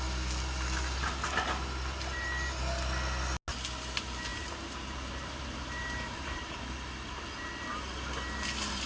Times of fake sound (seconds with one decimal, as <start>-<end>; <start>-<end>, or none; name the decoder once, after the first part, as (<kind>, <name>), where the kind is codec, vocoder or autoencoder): 4.3-6.5 (vocoder, BigVGAN v2)